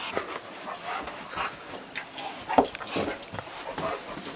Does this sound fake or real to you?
real